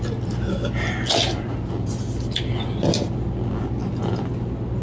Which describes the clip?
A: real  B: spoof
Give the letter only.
A